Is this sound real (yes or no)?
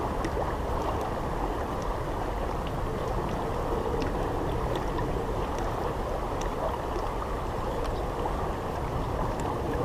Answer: yes